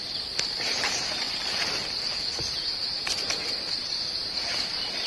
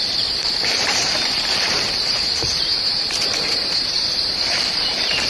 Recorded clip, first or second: first